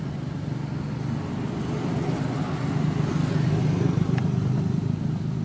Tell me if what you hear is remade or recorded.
recorded